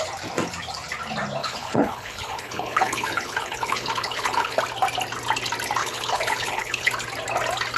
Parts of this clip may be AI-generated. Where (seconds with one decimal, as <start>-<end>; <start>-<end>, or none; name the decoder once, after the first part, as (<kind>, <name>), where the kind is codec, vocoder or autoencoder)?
1.4-4.6 (codec, HILCodec); 5.8-6.9